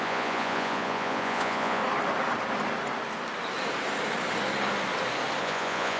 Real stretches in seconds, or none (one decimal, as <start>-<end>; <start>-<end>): 1.8-5.4